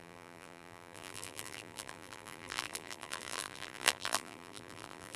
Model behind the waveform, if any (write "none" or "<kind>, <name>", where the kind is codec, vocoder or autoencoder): vocoder, BigVGAN v2